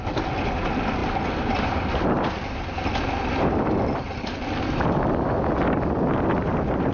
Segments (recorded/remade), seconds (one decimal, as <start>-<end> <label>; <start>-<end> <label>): 0.0-6.9 recorded